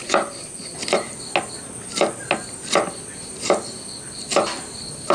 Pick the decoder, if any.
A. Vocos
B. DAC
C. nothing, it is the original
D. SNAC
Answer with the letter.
C